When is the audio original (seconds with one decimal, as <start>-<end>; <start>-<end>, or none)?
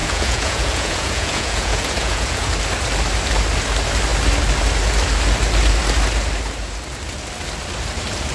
2.5-8.3